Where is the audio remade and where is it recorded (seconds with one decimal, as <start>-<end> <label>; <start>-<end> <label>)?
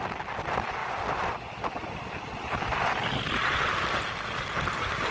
0.0-5.1 recorded